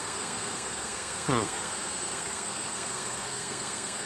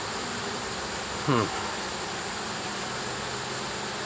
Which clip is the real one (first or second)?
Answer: second